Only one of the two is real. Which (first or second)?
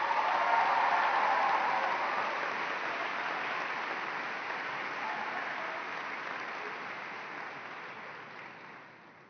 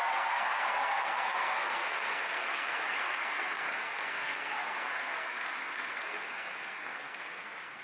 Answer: first